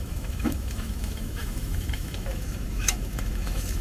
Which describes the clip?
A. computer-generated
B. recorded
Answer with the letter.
A